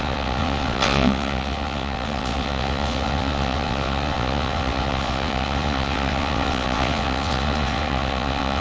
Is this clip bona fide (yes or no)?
no